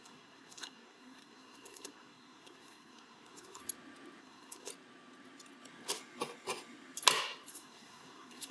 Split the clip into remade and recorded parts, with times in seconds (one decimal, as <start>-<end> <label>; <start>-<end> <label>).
0.0-3.6 remade; 3.6-4.2 recorded; 4.2-4.7 remade; 4.7-7.5 recorded; 7.5-8.5 remade